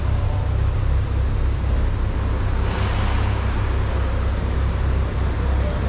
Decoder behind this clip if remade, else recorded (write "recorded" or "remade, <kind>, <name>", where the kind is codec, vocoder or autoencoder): recorded